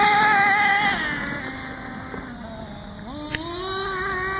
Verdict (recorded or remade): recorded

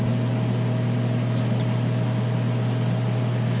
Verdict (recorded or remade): recorded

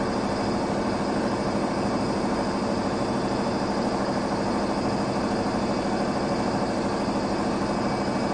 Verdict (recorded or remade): recorded